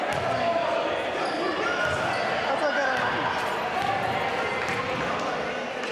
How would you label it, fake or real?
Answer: real